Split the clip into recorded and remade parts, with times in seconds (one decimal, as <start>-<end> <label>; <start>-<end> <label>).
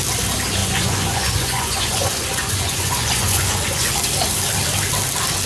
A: 0.0-0.6 recorded; 0.6-3.9 remade; 3.9-5.5 recorded